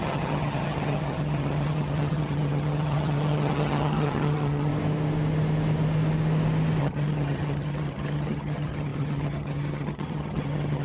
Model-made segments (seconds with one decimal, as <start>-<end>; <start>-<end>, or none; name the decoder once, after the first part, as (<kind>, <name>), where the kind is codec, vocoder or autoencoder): 0.0-4.7 (vocoder, HiFi-GAN); 6.8-10.8

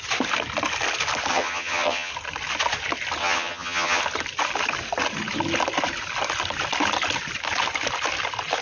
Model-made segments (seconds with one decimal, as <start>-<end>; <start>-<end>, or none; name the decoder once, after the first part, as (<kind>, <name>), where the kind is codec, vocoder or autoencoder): 1.3-2.1 (vocoder, HiFi-GAN); 3.2-4.0

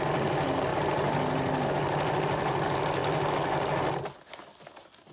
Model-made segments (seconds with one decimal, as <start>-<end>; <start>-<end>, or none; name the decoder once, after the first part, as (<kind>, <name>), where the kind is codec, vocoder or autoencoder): none

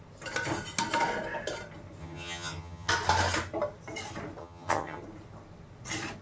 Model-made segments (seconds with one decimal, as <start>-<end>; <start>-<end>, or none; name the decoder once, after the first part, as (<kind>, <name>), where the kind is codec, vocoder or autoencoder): 2.0-2.9 (vocoder, HiFi-GAN); 4.4-5.0

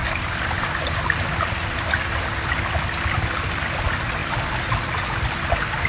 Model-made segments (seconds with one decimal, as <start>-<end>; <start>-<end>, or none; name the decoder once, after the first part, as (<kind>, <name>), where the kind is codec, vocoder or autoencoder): none